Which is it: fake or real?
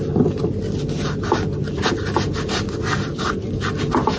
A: real